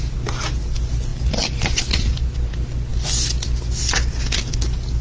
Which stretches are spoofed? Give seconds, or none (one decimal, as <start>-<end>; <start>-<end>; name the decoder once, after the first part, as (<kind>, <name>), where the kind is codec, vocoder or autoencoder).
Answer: none